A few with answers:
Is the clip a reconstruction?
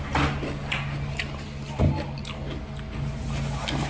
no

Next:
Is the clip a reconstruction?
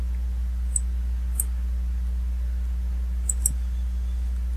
no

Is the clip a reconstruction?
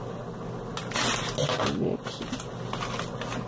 no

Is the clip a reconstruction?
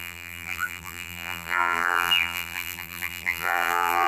yes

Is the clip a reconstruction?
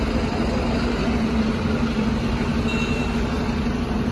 no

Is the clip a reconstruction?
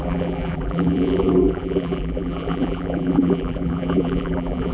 yes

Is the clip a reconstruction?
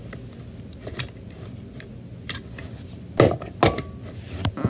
no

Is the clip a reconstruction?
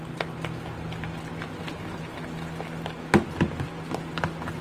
no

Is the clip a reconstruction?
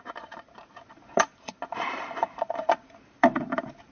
yes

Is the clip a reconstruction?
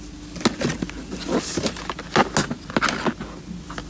no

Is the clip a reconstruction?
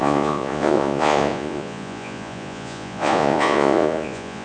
yes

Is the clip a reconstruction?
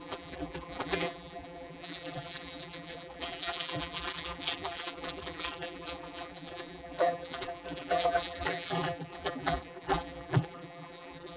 yes